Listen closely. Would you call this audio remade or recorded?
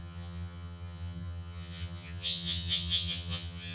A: remade